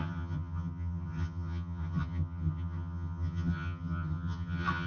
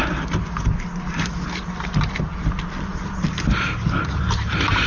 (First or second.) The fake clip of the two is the first